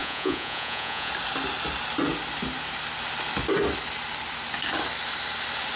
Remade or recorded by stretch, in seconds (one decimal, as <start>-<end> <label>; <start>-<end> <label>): 0.0-1.1 remade; 1.1-5.8 recorded